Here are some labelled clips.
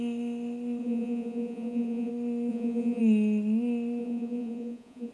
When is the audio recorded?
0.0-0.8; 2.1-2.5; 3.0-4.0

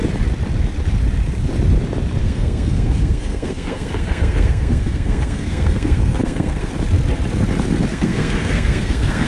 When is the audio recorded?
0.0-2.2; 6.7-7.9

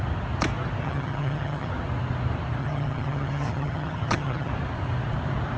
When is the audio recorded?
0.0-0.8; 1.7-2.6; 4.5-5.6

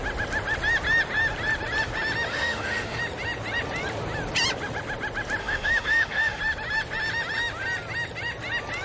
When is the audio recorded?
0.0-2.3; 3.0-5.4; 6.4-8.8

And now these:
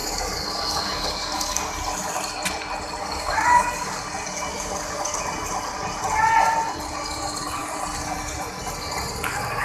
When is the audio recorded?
1.6-3.0; 4.0-4.5; 5.2-9.6

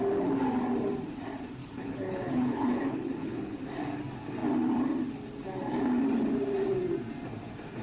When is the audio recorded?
0.0-1.6; 3.6-7.8

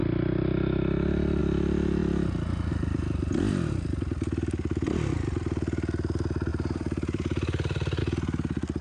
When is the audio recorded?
0.0-6.5; 8.0-8.8

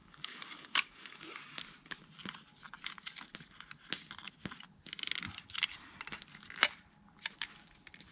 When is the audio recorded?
1.6-8.1